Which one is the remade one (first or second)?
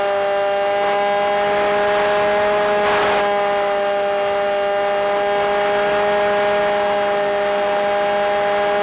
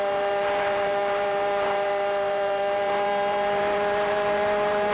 second